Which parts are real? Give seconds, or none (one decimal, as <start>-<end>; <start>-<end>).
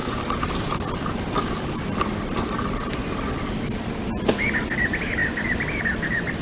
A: 0.0-6.4